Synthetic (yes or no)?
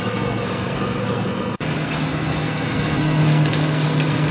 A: yes